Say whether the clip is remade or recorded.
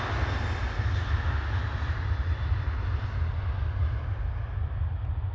recorded